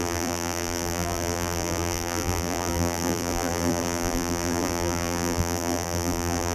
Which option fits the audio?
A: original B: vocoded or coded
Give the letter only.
B